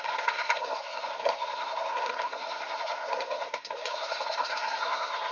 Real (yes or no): no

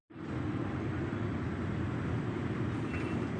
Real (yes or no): yes